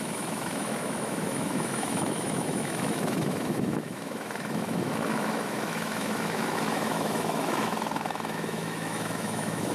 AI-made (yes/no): yes